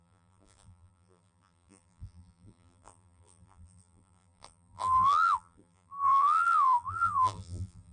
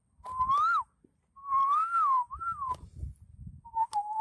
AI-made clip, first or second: first